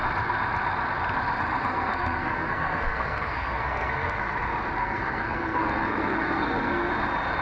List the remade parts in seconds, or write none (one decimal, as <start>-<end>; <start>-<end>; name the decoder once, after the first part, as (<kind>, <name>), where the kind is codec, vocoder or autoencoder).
1.6-4.3 (codec, SNAC); 4.8-6.9